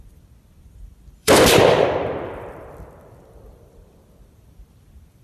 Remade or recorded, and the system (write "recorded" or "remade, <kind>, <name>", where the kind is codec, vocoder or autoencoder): remade, vocoder, BigVGAN v2